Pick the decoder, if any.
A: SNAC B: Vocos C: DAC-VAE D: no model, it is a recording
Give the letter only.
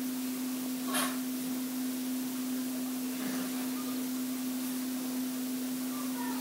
D